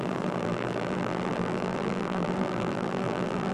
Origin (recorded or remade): remade